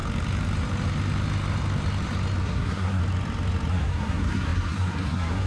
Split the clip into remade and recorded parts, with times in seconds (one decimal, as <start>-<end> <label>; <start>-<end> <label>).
0.0-2.4 recorded; 2.4-3.0 remade; 3.0-3.7 recorded; 3.7-5.5 remade